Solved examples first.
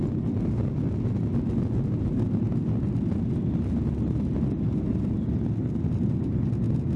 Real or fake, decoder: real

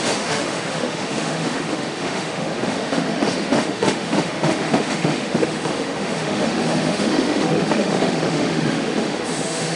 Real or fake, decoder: fake, autoencoder, DAC-VAE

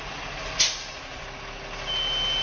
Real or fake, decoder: real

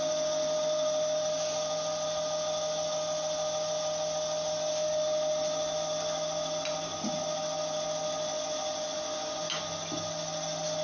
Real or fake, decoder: real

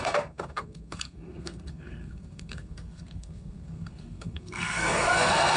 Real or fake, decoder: fake, codec, SNAC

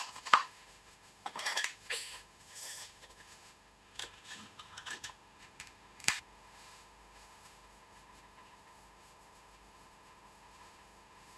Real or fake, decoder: fake, autoencoder, DAC-VAE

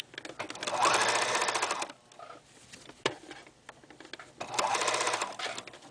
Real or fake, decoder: real